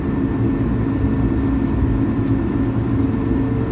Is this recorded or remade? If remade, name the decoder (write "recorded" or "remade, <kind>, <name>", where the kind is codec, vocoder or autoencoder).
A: recorded